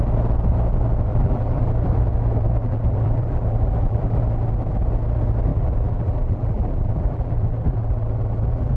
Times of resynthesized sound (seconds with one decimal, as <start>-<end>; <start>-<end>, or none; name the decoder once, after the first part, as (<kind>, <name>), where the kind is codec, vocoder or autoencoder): 1.1-1.7 (vocoder, BigVGAN v2); 2.6-4.2; 5.5-8.8